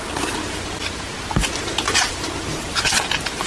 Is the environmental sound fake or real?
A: real